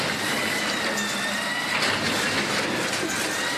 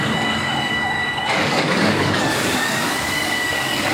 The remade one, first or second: second